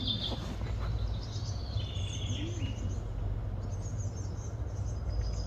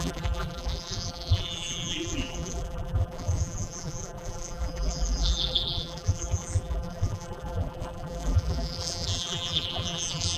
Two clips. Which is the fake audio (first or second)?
second